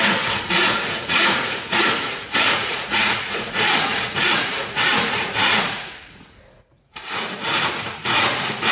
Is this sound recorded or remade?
remade